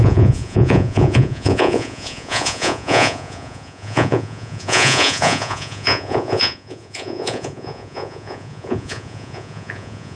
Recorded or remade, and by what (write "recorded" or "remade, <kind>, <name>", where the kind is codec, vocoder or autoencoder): remade, vocoder, Vocos